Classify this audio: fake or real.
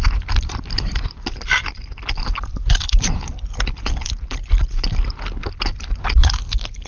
fake